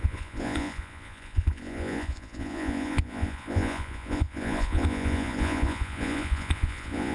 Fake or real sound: fake